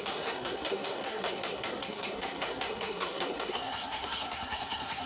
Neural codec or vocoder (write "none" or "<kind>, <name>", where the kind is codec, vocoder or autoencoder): codec, SNAC